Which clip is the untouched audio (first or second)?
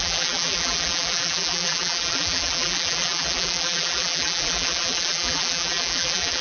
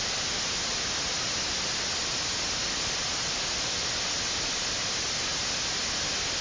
second